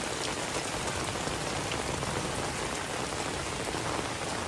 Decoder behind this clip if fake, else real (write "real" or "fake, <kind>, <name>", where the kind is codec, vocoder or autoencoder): real